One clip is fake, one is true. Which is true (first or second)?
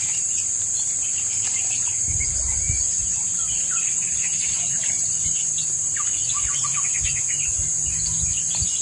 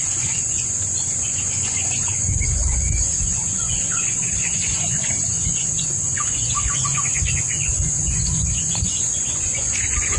first